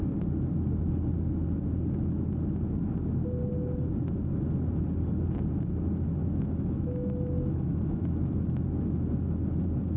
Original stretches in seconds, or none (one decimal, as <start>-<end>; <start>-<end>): 0.0-6.2; 8.6-10.0